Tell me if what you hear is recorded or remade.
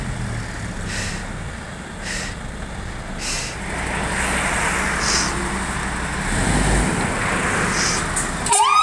recorded